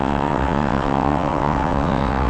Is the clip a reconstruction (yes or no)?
yes